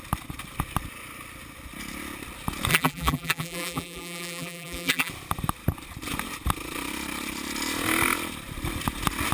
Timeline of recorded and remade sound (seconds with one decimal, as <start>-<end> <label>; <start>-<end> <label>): 0.0-2.7 recorded; 2.7-5.1 remade; 5.1-9.3 recorded